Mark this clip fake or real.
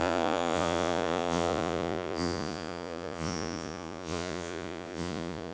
fake